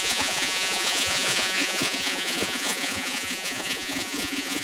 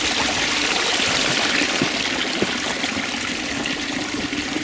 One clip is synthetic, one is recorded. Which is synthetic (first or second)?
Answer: first